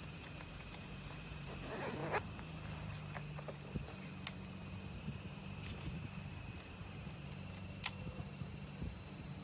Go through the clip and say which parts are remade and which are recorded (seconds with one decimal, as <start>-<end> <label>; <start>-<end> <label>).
0.0-2.0 remade; 2.0-5.0 recorded; 5.0-9.4 remade